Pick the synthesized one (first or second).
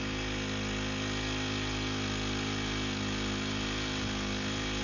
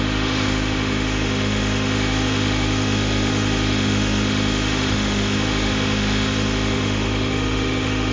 second